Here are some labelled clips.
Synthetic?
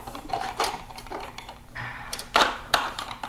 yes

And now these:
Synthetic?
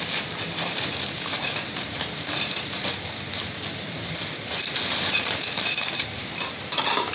yes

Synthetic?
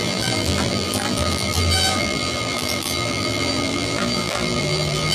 yes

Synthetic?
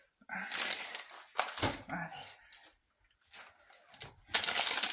no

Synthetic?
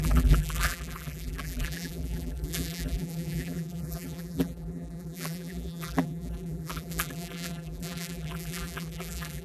yes